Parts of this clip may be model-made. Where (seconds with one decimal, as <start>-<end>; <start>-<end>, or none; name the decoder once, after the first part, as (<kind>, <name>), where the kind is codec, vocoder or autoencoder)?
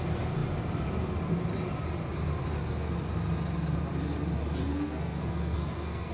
4.7-6.1 (codec, SNAC)